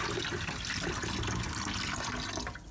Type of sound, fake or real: real